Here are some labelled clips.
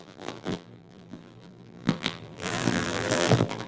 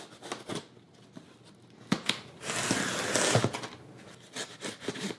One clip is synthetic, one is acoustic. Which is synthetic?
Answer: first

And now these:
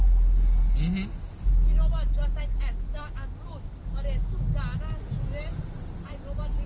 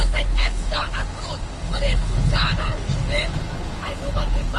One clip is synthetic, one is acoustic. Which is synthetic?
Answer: second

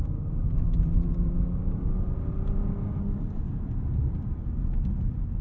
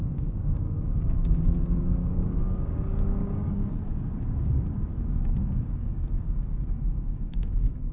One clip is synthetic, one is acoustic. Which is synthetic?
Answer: second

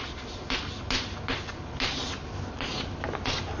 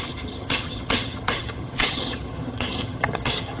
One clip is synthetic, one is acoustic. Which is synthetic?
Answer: second